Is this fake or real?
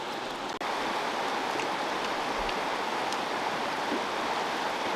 real